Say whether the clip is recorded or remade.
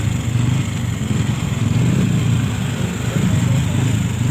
recorded